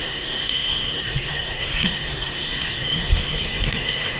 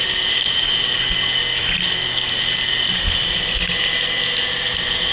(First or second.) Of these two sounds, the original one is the second